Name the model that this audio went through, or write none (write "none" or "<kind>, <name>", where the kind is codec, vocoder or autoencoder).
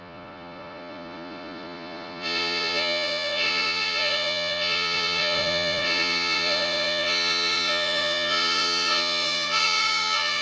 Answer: vocoder, Vocos